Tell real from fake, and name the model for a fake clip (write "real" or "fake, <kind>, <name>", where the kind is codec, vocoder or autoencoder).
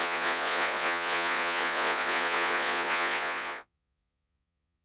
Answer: fake, vocoder, Vocos